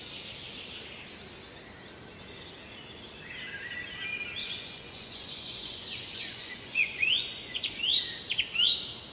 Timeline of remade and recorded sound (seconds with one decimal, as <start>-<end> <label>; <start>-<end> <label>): 0.0-4.4 recorded; 4.4-7.8 remade; 7.8-9.1 recorded